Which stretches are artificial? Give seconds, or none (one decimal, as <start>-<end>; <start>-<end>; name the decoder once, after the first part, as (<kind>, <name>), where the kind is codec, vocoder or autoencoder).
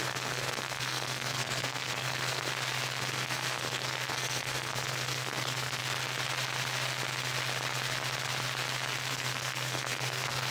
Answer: 0.0-2.5 (codec, SNAC); 3.0-5.8; 9.1-10.5